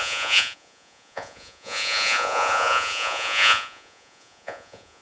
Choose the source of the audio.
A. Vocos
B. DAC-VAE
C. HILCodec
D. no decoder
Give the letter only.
A